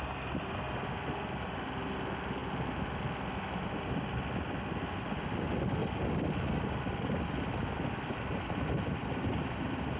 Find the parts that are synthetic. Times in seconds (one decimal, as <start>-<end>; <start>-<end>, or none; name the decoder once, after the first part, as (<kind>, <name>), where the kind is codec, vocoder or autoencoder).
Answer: none